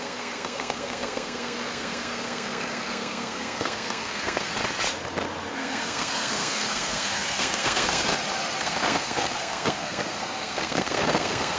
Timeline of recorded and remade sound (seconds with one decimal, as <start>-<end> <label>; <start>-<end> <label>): 0.0-4.5 remade; 4.5-5.5 recorded; 5.5-8.1 remade; 8.1-8.6 recorded; 8.6-11.6 remade